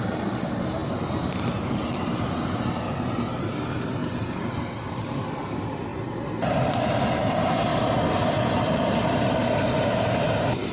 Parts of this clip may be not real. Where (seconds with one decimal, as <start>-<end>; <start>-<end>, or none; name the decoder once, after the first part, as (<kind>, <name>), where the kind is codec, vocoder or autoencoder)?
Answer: 0.0-5.9 (vocoder, BigVGAN v2); 7.0-7.7; 8.3-10.7